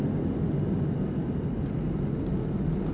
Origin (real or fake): real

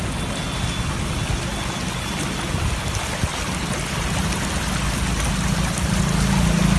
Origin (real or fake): real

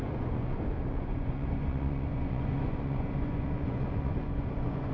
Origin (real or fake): fake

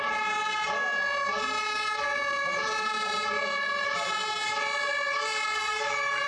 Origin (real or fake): real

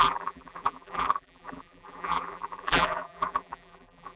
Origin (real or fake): fake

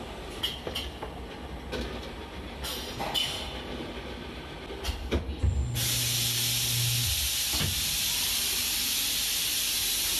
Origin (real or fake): real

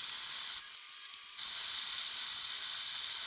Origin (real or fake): real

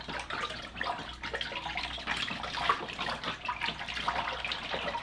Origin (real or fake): real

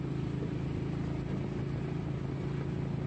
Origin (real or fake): real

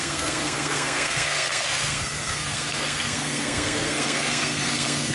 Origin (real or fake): fake